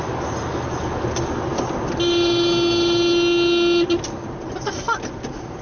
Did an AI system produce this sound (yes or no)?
no